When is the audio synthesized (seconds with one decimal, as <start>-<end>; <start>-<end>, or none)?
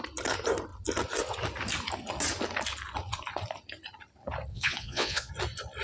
4.5-5.3